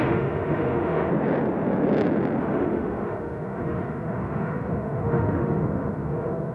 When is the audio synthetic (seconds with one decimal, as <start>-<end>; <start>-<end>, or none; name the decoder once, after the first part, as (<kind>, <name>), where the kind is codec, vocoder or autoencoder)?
0.0-1.1 (autoencoder, DAC-VAE); 2.4-6.5